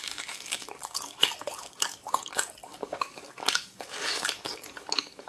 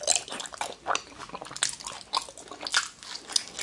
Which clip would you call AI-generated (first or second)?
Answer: first